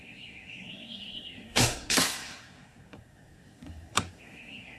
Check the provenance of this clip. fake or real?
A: fake